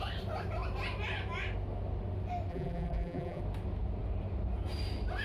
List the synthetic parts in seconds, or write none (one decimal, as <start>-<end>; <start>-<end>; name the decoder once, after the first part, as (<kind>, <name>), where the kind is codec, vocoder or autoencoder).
2.5-3.4 (vocoder, BigVGAN v2)